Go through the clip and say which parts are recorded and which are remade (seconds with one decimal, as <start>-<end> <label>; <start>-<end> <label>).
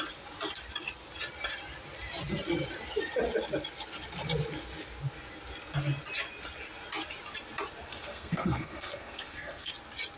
0.0-7.9 recorded; 7.9-9.7 remade; 9.7-10.2 recorded